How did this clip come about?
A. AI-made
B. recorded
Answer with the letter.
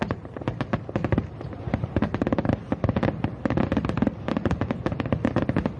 B